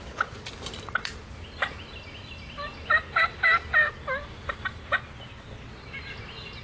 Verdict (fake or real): real